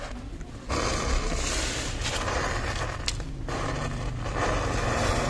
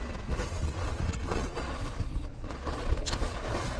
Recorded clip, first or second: first